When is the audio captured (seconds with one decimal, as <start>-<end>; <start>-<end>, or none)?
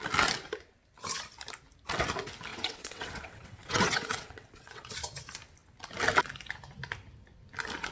0.0-2.5; 4.9-7.9